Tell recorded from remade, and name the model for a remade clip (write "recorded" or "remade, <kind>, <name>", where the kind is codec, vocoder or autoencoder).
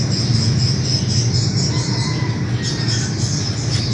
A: recorded